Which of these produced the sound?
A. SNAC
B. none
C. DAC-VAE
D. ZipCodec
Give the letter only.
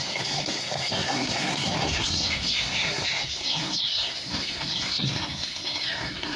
A